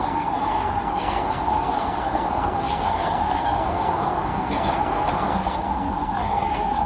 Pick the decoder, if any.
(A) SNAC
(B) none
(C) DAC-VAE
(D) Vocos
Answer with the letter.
A